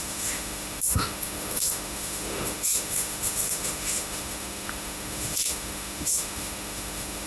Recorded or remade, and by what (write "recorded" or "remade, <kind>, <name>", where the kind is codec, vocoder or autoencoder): remade, autoencoder, DAC-VAE